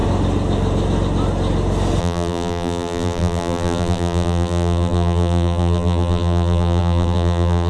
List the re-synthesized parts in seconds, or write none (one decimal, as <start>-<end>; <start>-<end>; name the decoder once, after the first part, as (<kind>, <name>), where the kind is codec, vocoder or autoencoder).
2.0-7.7 (vocoder, BigVGAN v2)